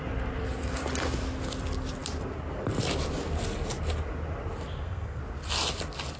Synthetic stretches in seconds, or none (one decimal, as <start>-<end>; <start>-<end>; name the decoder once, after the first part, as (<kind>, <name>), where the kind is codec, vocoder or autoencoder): 4.7-5.2 (codec, SNAC)